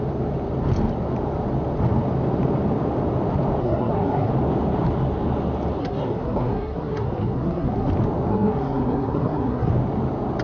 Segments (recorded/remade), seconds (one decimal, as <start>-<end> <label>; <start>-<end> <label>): 0.0-3.6 recorded; 3.6-4.3 remade; 4.3-5.8 recorded; 5.8-7.9 remade; 7.9-8.3 recorded; 8.3-9.7 remade; 9.7-10.4 recorded